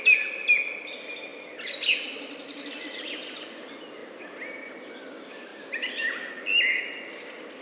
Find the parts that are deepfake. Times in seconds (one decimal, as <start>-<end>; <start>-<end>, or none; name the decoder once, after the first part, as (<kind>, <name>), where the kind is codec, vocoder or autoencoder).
1.3-3.6 (vocoder, BigVGAN v2)